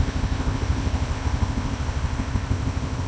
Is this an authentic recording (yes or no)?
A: no